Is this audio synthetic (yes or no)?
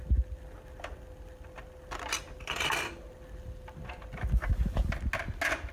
no